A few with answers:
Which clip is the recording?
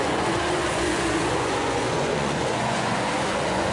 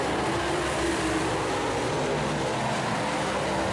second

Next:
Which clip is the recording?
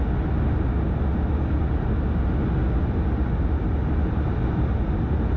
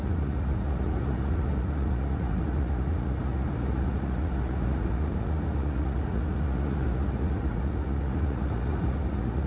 first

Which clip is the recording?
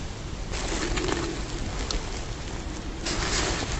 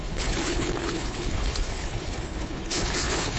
first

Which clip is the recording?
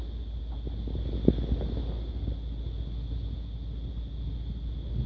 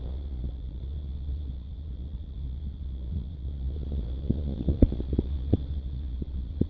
first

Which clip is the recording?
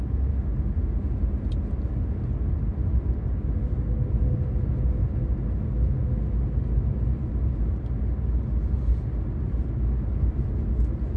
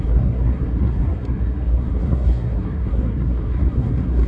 first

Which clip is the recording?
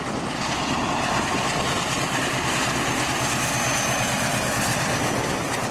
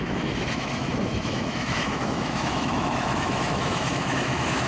first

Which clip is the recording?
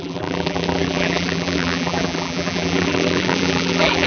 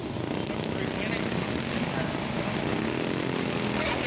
second